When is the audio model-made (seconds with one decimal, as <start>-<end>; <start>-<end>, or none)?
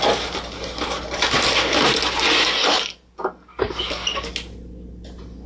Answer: 3.5-4.3